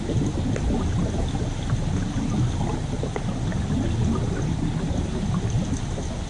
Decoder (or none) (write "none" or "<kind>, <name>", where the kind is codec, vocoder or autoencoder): none